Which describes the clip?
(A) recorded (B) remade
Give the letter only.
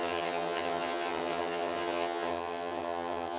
B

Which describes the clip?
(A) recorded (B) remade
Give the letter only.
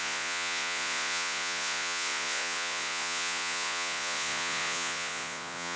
B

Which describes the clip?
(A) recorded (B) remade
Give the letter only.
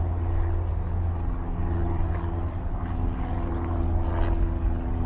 A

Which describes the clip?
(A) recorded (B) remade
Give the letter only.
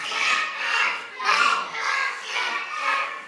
B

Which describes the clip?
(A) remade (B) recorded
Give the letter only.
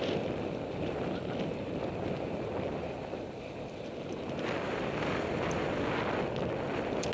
B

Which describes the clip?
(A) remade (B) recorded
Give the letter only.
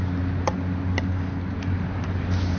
B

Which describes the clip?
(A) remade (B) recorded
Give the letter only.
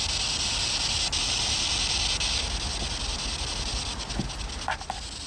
B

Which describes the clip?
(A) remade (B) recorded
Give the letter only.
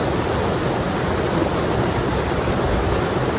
B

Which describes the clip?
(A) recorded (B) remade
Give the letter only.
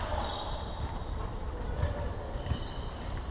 B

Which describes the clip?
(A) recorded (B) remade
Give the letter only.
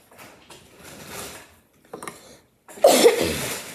A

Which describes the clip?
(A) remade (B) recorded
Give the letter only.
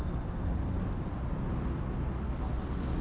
B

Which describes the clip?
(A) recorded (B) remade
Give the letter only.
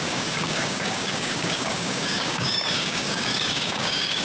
B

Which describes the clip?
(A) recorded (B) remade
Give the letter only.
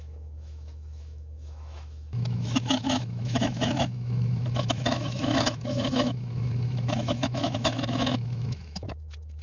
B